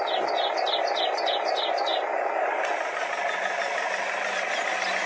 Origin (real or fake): real